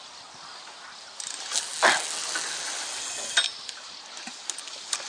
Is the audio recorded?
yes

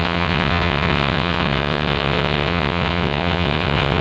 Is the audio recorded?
no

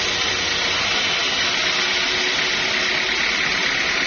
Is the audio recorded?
yes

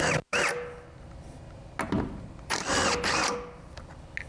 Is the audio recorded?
yes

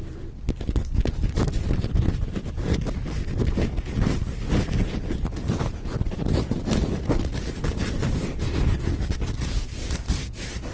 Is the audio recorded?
yes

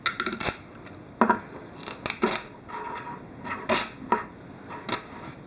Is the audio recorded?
yes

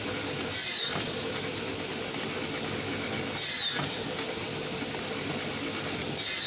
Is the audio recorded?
yes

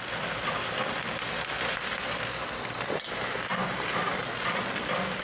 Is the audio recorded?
yes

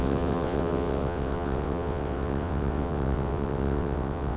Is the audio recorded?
no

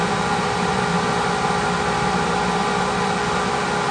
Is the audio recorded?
yes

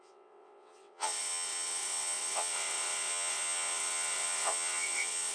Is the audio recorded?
no